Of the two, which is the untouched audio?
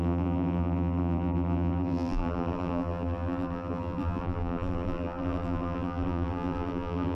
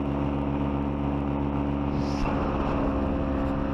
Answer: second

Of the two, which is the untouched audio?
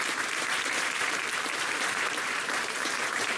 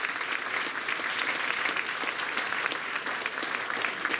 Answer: second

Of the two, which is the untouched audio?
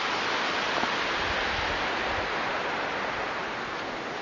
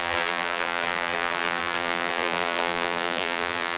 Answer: first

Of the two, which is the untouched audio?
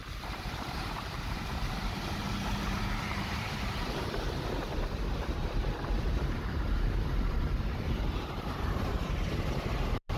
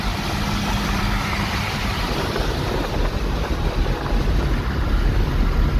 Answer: second